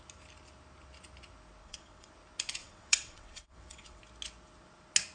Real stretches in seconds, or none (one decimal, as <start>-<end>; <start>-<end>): 0.0-1.6; 2.1-2.6; 4.0-5.1